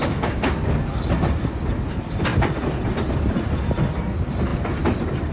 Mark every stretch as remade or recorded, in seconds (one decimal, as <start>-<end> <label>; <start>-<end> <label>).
0.0-0.5 remade; 0.5-5.3 recorded